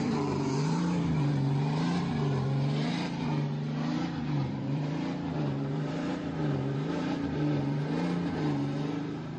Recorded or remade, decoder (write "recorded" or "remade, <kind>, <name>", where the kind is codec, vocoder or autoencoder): remade, vocoder, BigVGAN v2